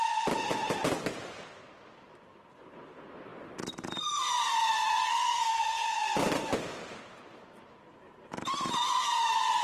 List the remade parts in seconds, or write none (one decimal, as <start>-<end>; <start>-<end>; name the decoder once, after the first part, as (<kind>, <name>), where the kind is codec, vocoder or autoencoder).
5.0-5.9 (codec, SNAC)